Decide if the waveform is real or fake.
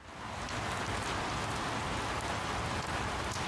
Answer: real